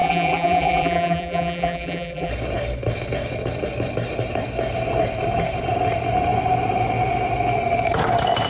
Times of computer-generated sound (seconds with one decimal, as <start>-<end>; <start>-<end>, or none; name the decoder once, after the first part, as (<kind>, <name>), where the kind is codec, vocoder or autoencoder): 0.0-2.3 (vocoder, BigVGAN v2)